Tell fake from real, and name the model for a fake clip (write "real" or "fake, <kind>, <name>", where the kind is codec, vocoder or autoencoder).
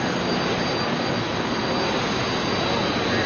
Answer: real